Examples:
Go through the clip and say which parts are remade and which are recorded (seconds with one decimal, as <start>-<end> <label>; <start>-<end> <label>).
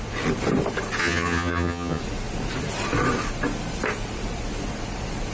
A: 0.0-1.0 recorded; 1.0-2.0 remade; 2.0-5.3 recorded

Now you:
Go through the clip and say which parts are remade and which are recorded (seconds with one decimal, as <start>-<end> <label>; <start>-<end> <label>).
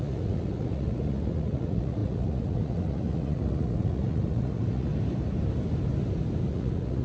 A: 0.0-4.9 remade; 4.9-6.5 recorded; 6.5-7.0 remade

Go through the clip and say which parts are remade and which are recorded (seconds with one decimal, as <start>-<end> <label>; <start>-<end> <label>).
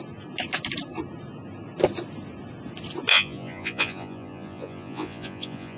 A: 0.0-3.1 recorded; 3.1-5.8 remade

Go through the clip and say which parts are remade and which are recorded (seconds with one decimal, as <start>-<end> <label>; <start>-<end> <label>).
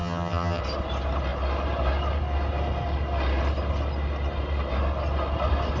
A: 0.0-0.6 remade; 0.6-5.8 recorded